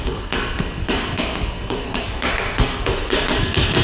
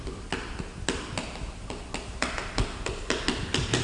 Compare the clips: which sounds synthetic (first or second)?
first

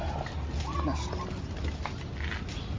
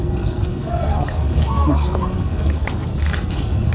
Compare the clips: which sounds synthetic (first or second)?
second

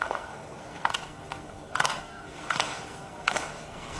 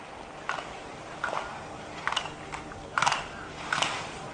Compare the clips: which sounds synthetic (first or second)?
first